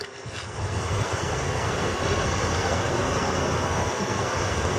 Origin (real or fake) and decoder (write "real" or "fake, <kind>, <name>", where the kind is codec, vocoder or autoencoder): fake, codec, SNAC